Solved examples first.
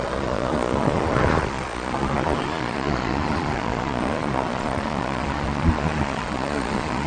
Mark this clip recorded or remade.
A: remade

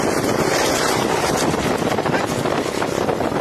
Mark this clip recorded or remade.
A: recorded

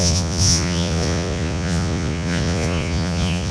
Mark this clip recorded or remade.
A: remade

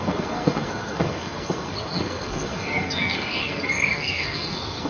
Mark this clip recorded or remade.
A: remade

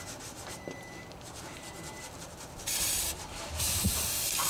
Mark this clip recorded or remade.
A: remade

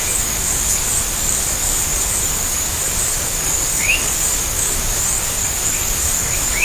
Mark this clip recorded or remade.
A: remade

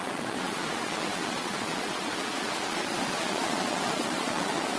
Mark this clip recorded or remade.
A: remade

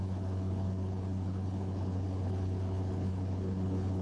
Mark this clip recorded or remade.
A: remade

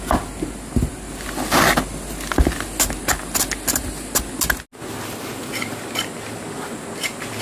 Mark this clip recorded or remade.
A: recorded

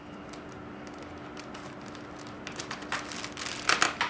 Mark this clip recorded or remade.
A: recorded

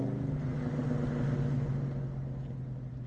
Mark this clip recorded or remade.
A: recorded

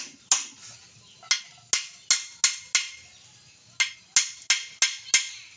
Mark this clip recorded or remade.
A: recorded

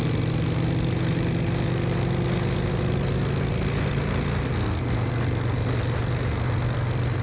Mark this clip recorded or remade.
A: recorded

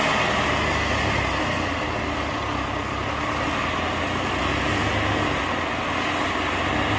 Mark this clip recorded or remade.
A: recorded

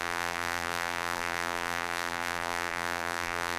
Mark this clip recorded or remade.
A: remade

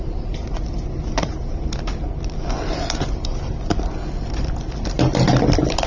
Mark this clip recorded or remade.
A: recorded